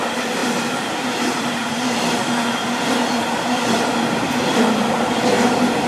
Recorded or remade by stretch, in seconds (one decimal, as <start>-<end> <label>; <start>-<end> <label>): 0.0-5.9 remade